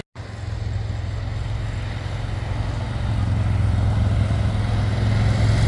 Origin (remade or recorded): recorded